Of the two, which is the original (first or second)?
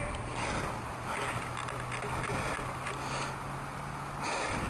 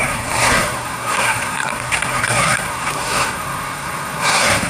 first